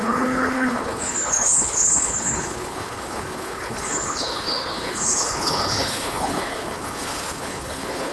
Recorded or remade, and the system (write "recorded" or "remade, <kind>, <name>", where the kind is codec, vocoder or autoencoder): remade, codec, HILCodec